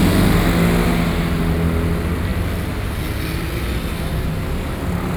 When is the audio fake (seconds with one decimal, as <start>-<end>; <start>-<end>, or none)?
none